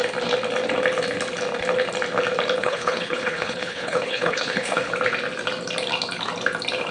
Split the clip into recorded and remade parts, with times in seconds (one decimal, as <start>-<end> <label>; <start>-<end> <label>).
0.0-2.6 recorded; 2.6-4.9 remade; 4.9-6.9 recorded